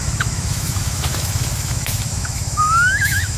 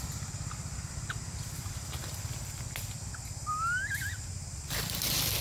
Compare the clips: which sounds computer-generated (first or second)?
first